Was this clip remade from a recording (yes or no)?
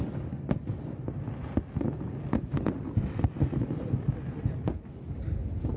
no